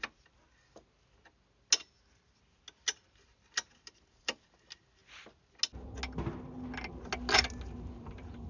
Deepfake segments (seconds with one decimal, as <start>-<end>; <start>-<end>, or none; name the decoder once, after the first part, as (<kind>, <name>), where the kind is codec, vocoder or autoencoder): none